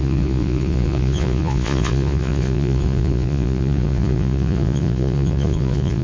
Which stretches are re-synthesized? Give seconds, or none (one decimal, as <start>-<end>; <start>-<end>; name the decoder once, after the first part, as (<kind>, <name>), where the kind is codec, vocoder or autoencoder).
0.0-6.0 (vocoder, Vocos)